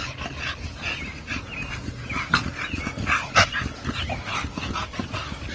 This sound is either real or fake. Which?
real